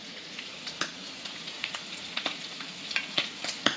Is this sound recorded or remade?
remade